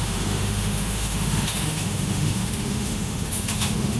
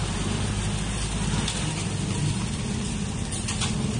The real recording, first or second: second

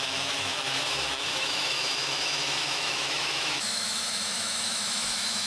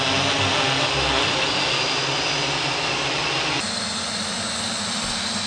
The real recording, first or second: second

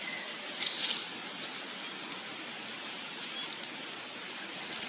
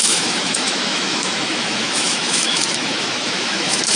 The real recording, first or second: first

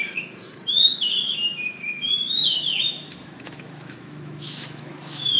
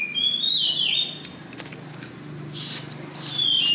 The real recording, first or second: second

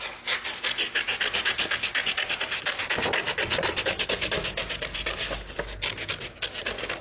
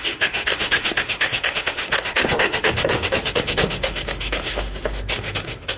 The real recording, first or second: first